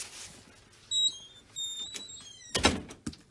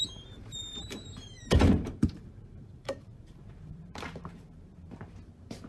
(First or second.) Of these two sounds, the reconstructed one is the second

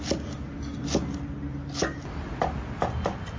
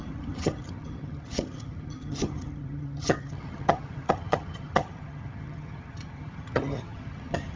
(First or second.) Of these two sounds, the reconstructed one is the second